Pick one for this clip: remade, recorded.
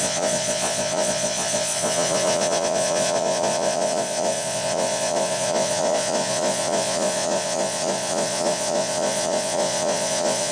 remade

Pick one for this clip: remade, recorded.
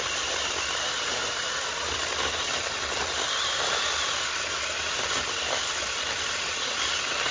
recorded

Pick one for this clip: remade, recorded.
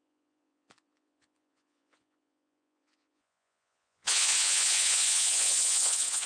remade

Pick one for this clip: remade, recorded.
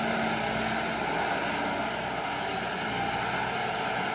recorded